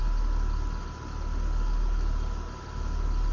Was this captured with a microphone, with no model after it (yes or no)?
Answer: yes